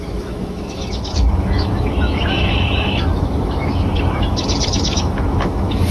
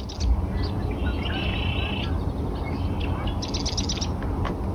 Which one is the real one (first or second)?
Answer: second